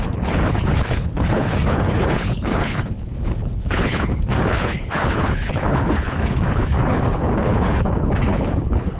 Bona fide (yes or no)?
no